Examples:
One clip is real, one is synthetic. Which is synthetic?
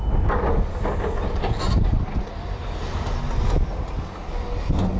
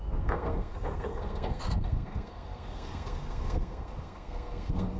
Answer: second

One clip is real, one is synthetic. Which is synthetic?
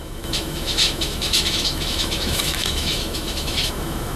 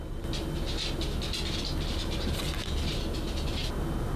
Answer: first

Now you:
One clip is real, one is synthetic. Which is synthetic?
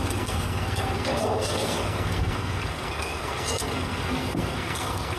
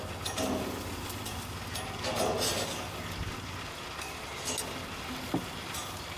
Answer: first